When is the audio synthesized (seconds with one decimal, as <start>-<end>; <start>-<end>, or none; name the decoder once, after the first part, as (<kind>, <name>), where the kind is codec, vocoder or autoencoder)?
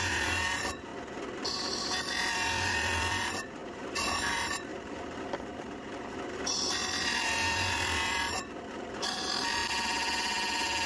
0.0-0.9 (vocoder, BigVGAN v2); 2.2-9.6